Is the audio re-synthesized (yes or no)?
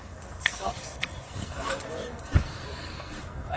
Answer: yes